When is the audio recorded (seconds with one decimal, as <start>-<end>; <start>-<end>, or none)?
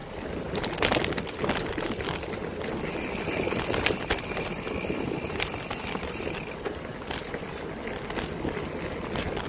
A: 0.0-9.5